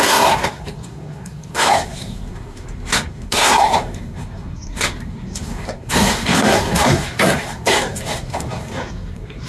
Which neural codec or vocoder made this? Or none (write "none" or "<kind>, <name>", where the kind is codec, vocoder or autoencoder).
codec, SNAC